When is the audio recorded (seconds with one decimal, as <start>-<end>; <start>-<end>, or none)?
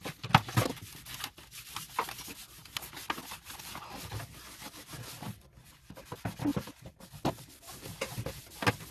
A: 0.0-8.9